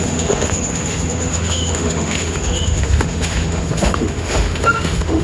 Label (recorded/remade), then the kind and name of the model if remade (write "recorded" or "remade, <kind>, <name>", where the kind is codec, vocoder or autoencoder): remade, autoencoder, DAC-VAE